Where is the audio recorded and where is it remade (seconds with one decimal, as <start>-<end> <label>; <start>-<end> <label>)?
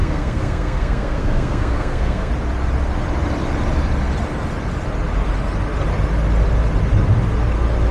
0.0-2.3 remade; 2.3-7.9 recorded